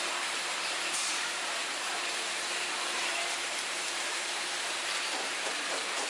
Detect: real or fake fake